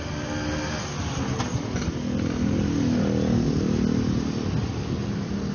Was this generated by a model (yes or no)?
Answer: no